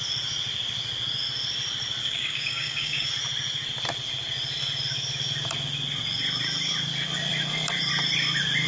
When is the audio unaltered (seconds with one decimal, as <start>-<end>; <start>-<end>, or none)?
0.0-2.0; 3.1-8.7